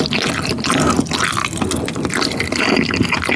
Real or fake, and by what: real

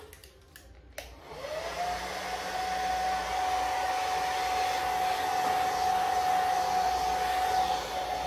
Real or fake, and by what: real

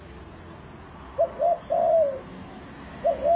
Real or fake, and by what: real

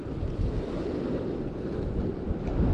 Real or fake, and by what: real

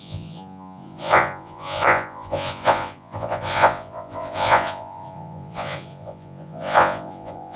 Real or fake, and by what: fake, vocoder, Vocos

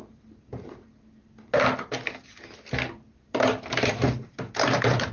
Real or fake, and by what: real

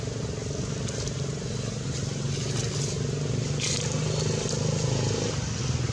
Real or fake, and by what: real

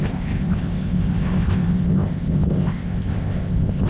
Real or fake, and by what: fake, codec, ZipCodec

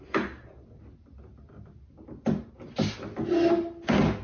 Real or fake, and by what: real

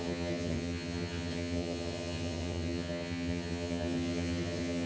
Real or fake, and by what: fake, vocoder, HiFi-GAN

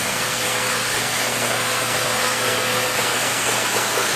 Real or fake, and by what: fake, codec, SNAC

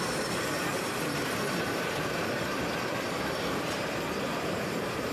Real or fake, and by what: fake, vocoder, BigVGAN v2